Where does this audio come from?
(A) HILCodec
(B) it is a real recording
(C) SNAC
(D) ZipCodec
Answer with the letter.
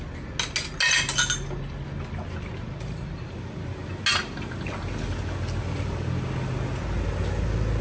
B